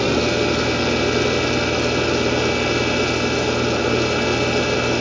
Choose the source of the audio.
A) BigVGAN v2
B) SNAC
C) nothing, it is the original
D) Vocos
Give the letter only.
C